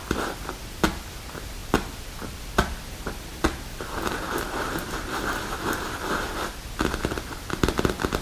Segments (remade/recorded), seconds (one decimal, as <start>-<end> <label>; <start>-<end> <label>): 0.0-8.2 recorded